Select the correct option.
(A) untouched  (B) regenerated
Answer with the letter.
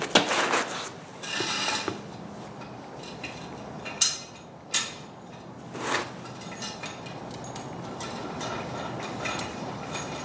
A